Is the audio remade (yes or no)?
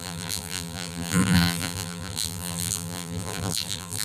yes